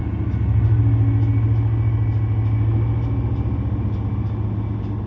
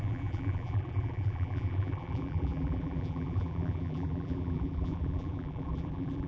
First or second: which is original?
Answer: first